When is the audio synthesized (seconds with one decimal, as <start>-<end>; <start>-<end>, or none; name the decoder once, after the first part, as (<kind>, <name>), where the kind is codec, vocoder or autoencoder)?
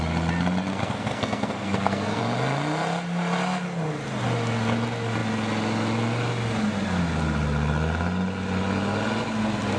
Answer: 0.7-2.2 (codec, SNAC)